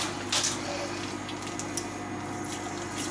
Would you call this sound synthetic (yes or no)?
no